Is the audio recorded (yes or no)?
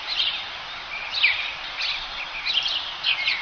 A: yes